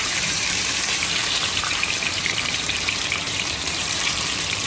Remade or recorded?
remade